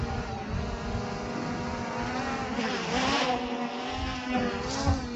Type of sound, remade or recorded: recorded